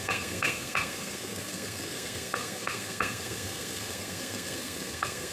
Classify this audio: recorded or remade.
remade